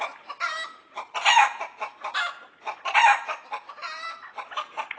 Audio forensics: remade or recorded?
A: recorded